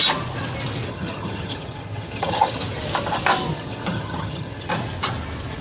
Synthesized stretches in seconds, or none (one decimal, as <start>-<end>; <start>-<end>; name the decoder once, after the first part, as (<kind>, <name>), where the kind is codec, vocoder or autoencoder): 0.9-2.6 (vocoder, HiFi-GAN); 3.5-4.7